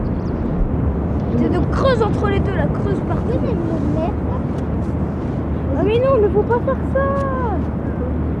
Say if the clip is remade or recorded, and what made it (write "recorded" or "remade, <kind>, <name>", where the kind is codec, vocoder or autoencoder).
recorded